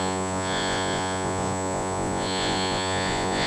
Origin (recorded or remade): remade